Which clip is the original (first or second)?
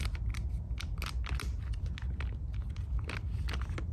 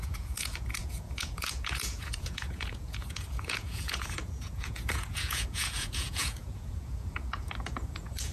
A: first